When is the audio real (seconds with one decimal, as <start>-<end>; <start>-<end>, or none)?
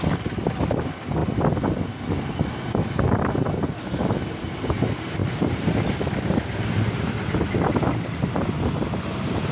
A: 1.2-2.5